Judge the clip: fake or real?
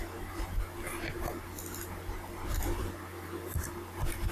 real